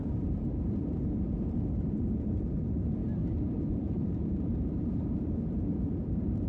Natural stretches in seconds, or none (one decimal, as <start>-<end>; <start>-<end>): 3.0-3.7